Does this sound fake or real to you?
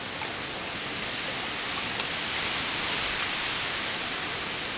real